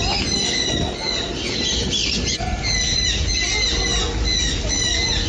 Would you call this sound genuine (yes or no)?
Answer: yes